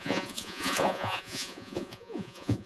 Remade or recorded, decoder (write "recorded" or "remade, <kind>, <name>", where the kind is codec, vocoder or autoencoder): remade, vocoder, Vocos